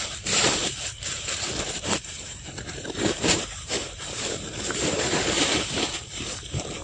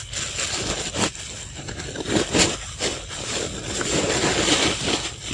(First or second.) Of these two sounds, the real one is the second